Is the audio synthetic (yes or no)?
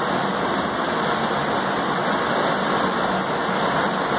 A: no